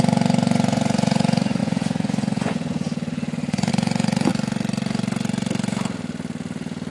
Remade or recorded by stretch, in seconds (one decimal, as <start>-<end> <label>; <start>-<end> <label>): 0.0-4.3 remade; 4.3-6.9 recorded